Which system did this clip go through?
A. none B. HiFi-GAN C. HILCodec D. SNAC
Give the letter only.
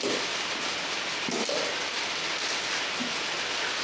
A